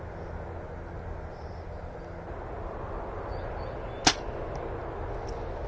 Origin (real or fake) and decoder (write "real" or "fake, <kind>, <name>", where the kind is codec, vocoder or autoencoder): real